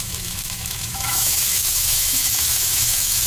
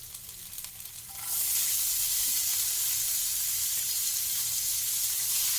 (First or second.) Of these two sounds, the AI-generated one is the first